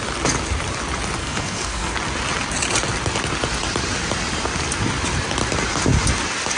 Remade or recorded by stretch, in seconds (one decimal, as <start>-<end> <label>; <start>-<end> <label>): 0.0-1.2 recorded; 1.2-1.9 remade; 1.9-6.6 recorded